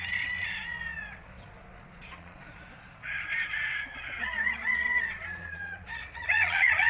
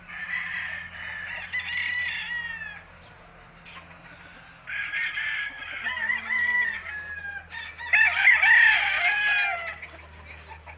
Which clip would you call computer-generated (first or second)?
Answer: first